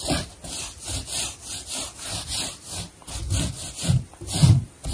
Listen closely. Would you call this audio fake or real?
real